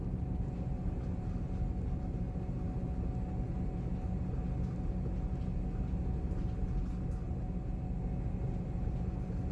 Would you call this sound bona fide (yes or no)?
yes